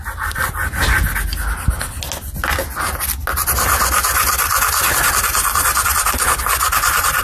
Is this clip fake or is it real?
real